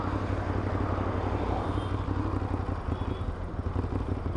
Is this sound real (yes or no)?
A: yes